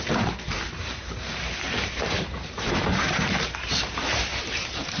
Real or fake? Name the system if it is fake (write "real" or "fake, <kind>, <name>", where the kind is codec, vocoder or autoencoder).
fake, vocoder, BigVGAN v2